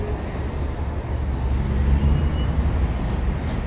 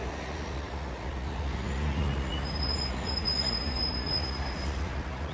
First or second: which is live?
first